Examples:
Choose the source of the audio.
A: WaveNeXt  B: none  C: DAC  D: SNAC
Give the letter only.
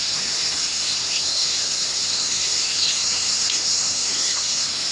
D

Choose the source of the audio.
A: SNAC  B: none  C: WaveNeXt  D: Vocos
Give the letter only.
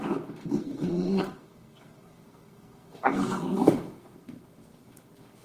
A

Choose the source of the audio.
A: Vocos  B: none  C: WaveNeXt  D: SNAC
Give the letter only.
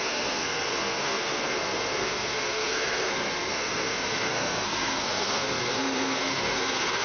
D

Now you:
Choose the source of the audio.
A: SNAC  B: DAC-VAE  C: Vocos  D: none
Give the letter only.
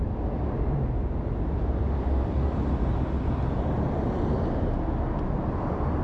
D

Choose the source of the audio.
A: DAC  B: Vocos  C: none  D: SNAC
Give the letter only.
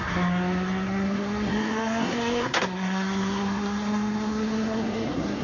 D